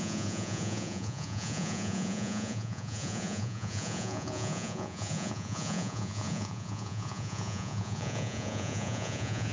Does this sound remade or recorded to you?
remade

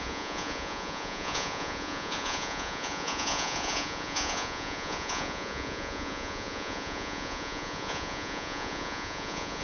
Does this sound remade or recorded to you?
remade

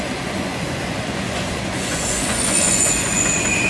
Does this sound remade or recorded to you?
remade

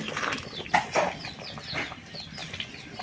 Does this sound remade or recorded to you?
recorded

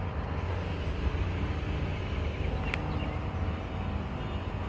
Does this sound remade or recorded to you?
recorded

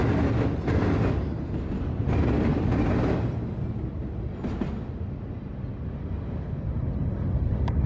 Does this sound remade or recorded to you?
recorded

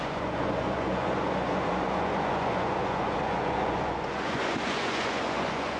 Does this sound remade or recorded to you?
remade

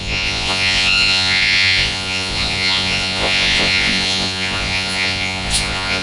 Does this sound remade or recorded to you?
remade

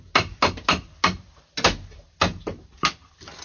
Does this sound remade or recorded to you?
recorded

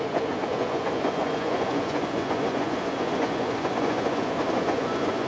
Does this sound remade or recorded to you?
remade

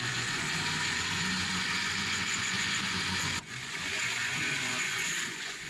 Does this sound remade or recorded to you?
remade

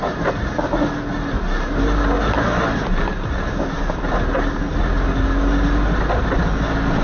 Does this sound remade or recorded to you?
recorded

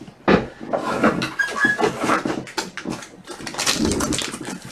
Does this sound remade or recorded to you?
recorded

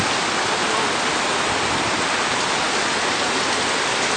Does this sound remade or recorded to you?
recorded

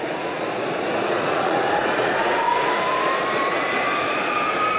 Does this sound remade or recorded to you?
remade